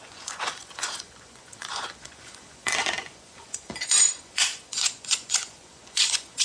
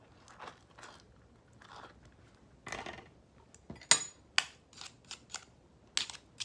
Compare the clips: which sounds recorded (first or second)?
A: second